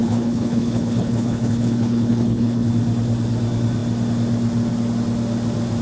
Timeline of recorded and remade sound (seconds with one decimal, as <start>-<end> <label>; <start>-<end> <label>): 0.0-2.7 remade; 2.7-5.8 recorded